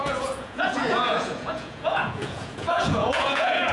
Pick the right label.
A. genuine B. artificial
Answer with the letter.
B